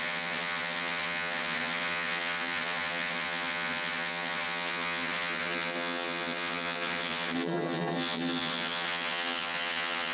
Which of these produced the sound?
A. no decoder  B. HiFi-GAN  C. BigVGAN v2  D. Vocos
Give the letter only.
B